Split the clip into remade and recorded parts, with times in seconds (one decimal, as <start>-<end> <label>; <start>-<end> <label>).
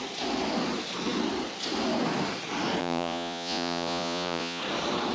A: 0.0-2.8 recorded; 2.8-4.6 remade; 4.6-5.1 recorded